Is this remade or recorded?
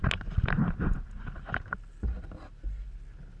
recorded